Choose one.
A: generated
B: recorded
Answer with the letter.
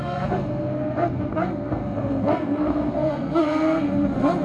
A